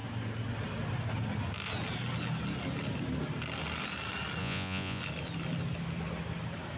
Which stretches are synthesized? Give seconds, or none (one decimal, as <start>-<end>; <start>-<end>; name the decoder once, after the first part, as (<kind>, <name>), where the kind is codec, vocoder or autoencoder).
4.4-5.0 (vocoder, Vocos)